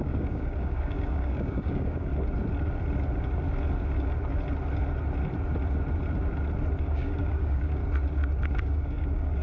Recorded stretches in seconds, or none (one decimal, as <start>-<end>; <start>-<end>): 2.1-6.8; 7.8-8.6